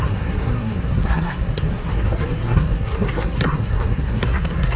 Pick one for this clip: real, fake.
fake